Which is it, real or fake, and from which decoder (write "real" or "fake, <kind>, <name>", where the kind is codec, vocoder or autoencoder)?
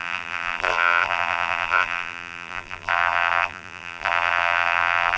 fake, vocoder, BigVGAN v2